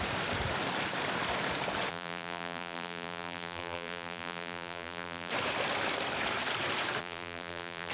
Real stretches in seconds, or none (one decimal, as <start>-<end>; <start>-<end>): 0.0-1.9; 5.3-7.0